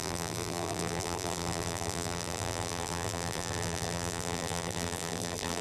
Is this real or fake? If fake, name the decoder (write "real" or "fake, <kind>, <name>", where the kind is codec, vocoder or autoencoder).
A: fake, vocoder, BigVGAN v2